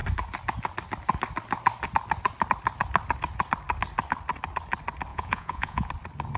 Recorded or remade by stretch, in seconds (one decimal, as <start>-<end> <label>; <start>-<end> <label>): 0.0-5.1 recorded; 5.1-5.9 remade; 5.9-6.4 recorded